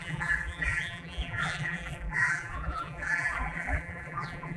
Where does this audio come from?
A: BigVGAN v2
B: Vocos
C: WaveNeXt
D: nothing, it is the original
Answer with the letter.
A